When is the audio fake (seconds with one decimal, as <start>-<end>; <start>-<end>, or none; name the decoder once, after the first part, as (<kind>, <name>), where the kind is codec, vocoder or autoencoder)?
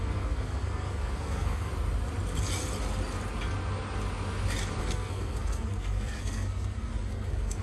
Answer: 0.0-1.7 (codec, SNAC); 4.8-7.6